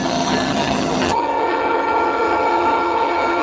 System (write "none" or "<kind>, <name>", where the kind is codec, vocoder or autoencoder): vocoder, HiFi-GAN